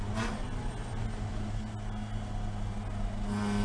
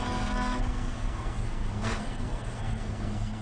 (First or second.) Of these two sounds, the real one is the first